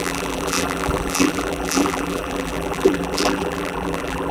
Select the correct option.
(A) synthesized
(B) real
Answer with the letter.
A